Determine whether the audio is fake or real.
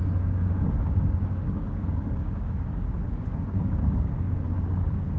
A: fake